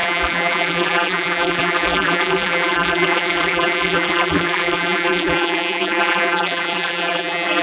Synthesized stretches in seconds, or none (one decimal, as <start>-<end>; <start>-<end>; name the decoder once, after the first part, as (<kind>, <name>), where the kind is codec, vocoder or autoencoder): 0.0-7.6 (vocoder, BigVGAN v2)